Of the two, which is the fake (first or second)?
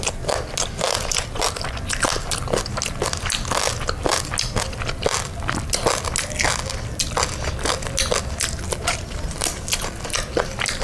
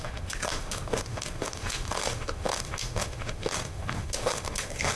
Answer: second